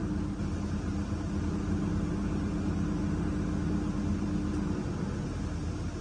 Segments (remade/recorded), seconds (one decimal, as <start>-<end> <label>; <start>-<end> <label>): 0.0-6.0 recorded